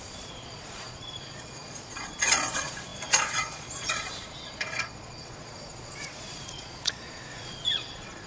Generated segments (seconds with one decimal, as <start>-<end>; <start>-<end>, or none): 0.0-8.3